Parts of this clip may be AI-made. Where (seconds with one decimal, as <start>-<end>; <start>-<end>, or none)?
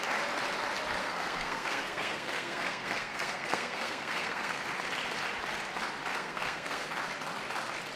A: 1.0-4.7; 6.1-6.9